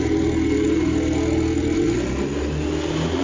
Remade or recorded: recorded